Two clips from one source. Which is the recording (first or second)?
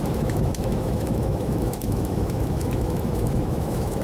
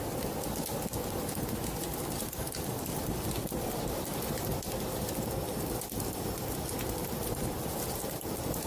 second